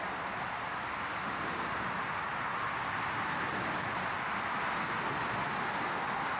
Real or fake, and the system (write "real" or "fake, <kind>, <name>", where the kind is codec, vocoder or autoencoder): real